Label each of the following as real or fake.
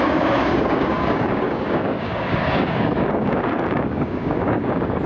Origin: fake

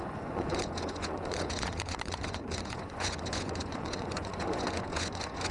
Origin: fake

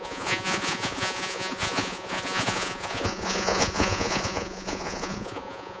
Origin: fake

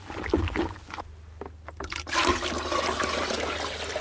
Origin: real